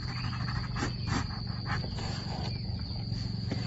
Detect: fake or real real